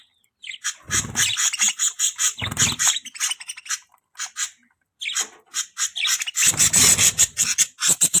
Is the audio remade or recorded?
remade